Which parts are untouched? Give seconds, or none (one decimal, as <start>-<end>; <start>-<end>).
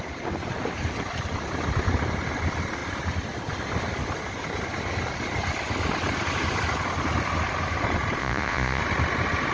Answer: 0.0-8.2; 8.8-9.5